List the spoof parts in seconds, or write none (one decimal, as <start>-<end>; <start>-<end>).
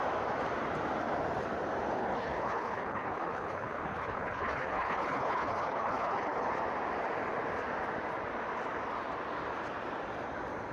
2.0-6.5